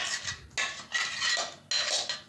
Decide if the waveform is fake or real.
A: real